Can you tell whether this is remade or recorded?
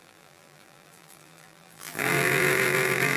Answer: remade